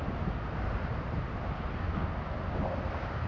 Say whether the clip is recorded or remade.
recorded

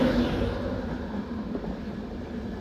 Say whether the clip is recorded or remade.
recorded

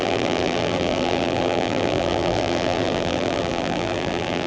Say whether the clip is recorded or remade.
remade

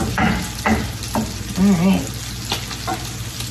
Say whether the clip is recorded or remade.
recorded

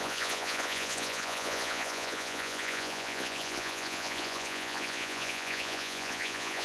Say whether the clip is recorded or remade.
remade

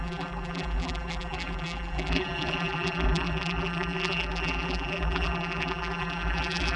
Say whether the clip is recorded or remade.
remade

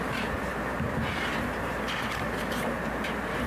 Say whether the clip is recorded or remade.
remade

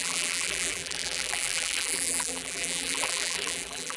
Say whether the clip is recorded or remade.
remade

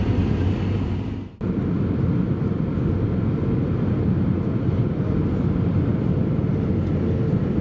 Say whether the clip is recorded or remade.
recorded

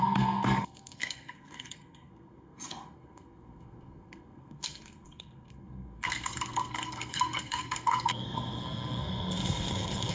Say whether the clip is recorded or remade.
remade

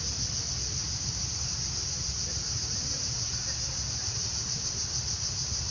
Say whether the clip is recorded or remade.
remade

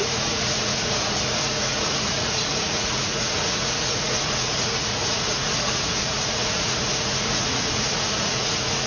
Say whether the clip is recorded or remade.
remade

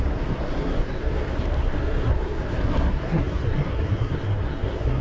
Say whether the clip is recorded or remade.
remade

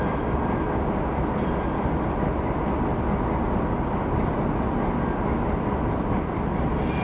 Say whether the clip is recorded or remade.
recorded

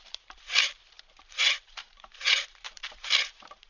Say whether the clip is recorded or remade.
remade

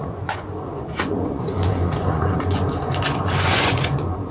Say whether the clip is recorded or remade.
remade